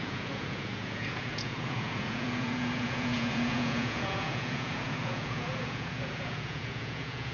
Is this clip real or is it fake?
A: fake